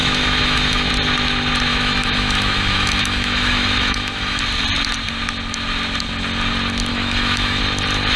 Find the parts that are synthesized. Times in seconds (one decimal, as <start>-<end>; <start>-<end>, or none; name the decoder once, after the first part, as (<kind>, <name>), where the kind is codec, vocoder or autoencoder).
0.0-0.9 (autoencoder, DAC-VAE); 1.7-4.4; 6.9-7.6